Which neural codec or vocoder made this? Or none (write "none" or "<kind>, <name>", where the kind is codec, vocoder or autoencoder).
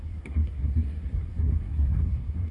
codec, SNAC